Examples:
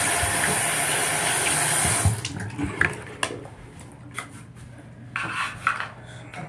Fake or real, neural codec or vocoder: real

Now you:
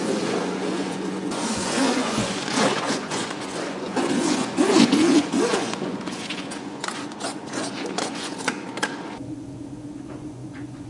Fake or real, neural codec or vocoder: fake, vocoder, Vocos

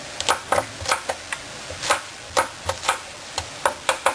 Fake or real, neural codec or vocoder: real